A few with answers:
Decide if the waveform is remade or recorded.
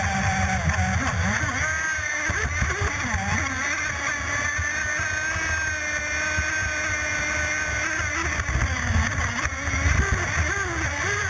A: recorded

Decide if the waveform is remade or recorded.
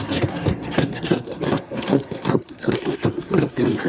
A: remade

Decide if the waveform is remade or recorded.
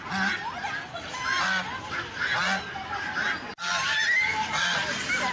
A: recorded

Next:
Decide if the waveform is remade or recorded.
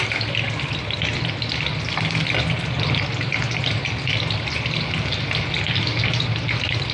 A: recorded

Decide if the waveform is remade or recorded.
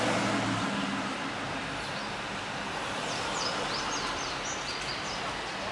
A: recorded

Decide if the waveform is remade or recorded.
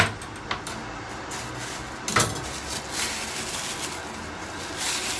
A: recorded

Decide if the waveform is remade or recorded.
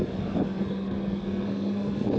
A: remade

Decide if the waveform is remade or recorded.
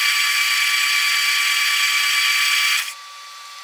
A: recorded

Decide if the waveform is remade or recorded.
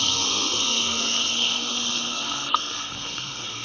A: remade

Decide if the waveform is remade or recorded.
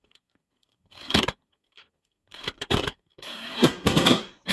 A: remade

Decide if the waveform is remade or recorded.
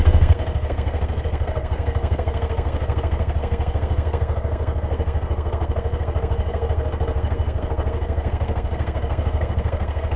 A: remade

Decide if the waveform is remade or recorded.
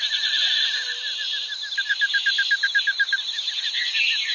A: recorded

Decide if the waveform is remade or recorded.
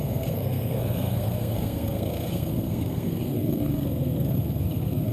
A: remade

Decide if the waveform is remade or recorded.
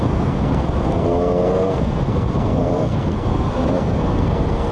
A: remade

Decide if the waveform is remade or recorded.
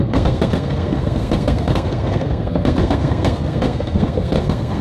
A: remade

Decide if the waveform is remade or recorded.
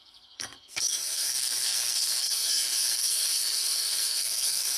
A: remade